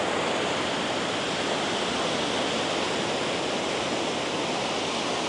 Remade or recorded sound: recorded